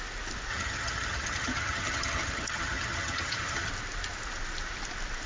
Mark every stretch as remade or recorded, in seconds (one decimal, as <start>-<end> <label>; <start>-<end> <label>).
0.0-0.5 recorded; 0.5-3.7 remade; 3.7-5.3 recorded